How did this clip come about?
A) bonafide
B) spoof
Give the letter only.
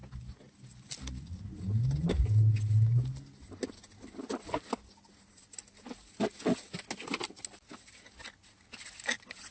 A